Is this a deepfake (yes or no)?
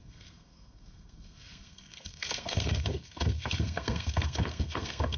yes